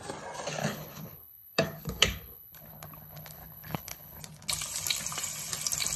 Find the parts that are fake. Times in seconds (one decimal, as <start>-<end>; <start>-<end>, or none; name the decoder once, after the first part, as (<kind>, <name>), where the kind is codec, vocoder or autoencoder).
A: 0.6-4.2 (codec, HILCodec)